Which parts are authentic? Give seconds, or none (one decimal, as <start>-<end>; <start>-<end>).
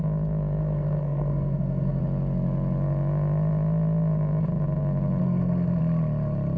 0.0-0.6; 2.0-5.2; 5.8-6.6